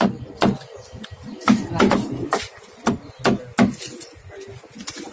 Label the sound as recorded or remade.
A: recorded